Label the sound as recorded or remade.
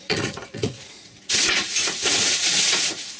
remade